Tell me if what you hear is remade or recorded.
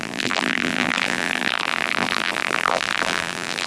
remade